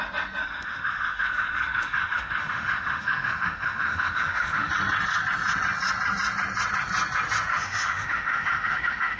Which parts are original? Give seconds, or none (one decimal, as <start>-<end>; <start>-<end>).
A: 0.0-0.4; 4.7-7.5